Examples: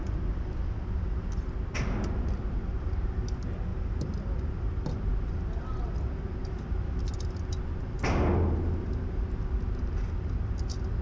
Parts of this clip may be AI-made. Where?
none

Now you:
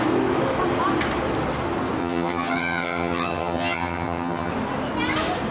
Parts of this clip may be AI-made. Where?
2.0-4.5 (vocoder, HiFi-GAN)

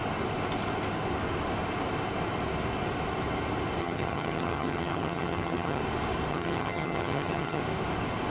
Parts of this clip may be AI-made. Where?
3.8-5.8 (vocoder, HiFi-GAN); 6.3-7.6

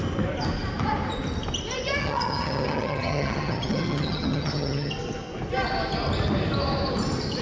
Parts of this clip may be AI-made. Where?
2.0-4.9 (vocoder, HiFi-GAN)

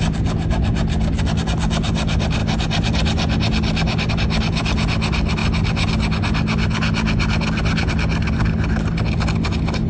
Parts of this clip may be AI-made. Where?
none

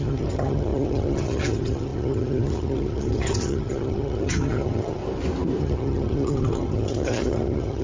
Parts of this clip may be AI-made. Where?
0.0-5.0 (vocoder, HiFi-GAN); 5.6-7.8

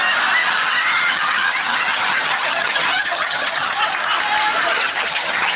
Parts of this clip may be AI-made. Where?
0.4-3.8 (vocoder, HiFi-GAN); 4.7-5.6

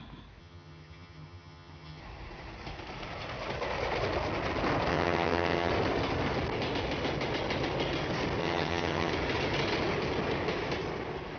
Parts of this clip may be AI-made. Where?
0.4-2.0 (vocoder, HiFi-GAN); 4.9-5.7; 8.4-9.1